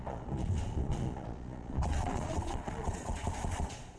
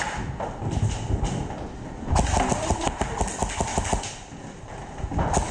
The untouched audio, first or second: second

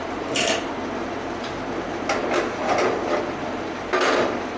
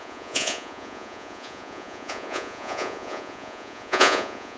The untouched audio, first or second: first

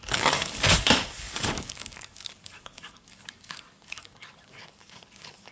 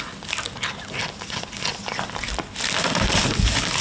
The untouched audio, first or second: second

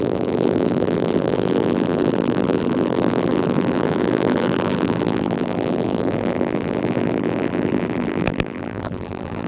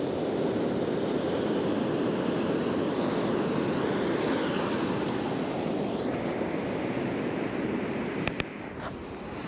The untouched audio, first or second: second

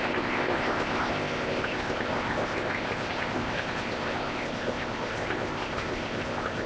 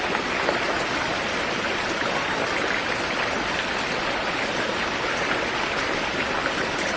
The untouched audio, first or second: second